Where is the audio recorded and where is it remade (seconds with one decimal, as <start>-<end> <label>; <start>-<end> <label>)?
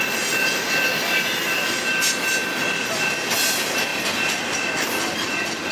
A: 0.0-5.7 recorded